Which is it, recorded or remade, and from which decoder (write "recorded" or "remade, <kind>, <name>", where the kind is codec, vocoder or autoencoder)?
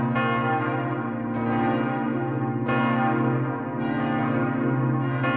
recorded